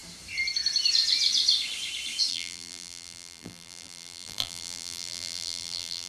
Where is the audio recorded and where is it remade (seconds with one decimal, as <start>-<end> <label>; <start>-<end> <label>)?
0.0-2.3 recorded; 2.3-6.1 remade